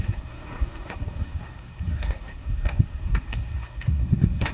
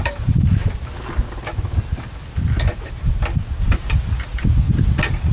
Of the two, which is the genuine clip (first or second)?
second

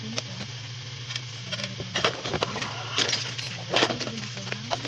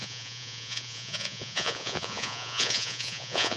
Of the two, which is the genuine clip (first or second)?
first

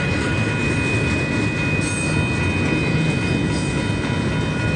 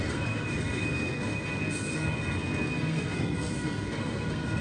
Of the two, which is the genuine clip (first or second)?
first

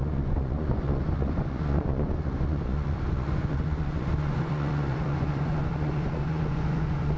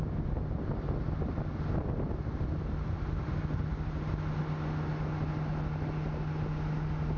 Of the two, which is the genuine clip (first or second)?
second